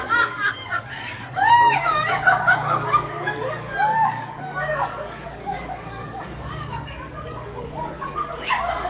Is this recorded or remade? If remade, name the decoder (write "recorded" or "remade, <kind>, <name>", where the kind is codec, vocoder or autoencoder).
remade, codec, DAC